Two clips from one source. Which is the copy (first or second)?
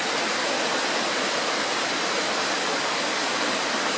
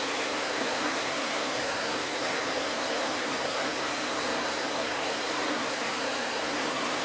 second